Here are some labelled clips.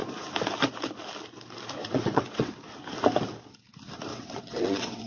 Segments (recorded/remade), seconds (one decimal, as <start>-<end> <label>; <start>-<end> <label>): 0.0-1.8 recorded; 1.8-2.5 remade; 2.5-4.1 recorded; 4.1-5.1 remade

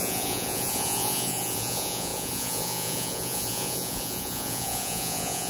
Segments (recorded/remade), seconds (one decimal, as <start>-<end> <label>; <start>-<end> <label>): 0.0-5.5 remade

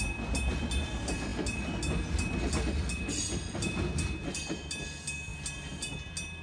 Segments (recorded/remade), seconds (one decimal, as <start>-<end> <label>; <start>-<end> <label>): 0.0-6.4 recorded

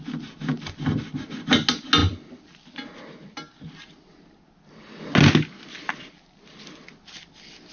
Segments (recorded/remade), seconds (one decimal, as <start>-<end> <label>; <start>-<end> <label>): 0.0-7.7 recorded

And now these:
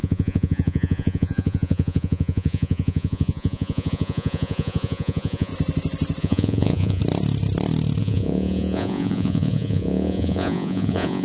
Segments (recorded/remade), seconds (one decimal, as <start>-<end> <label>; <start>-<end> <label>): 0.0-5.5 remade; 5.5-6.2 recorded; 6.2-7.0 remade; 7.0-8.0 recorded; 8.0-11.2 remade